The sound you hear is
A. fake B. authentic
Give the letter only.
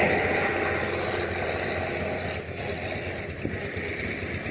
B